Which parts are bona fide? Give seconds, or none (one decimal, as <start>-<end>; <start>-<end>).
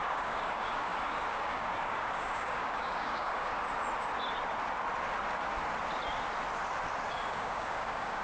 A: 3.5-7.1